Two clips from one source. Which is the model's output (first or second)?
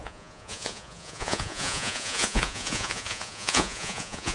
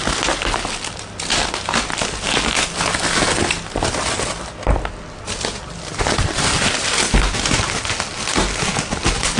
first